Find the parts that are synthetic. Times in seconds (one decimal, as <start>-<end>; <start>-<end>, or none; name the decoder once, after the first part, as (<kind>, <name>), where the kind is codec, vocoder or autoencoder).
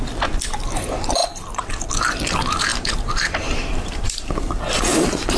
2.7-4.3 (vocoder, BigVGAN v2)